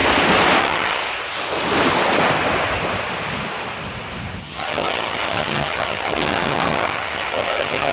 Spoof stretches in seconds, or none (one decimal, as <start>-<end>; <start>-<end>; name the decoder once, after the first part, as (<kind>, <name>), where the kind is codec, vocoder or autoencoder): 0.6-1.0 (vocoder, HiFi-GAN); 4.4-7.9